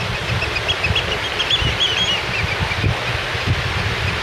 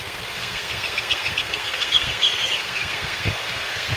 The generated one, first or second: second